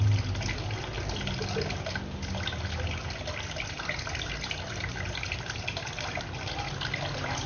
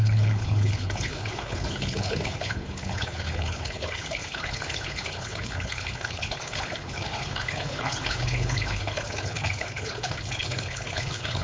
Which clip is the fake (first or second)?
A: second